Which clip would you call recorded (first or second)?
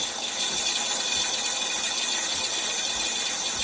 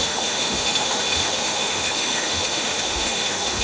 first